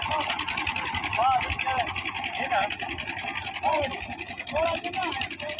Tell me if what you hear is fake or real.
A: real